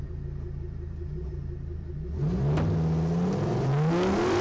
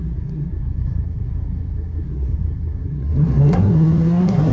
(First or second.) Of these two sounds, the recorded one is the first